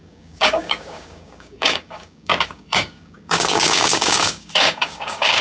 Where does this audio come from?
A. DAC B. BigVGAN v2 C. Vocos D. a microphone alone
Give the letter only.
A